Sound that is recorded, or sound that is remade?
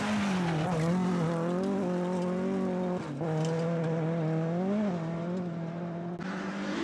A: recorded